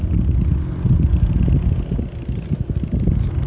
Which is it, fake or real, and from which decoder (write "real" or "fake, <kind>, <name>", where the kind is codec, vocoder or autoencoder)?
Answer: real